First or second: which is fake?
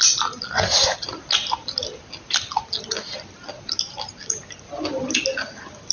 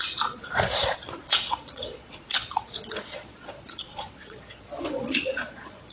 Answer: second